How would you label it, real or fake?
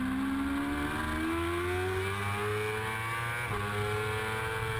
real